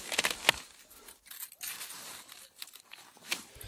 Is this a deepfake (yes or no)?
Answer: no